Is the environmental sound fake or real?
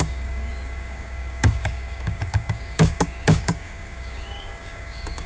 fake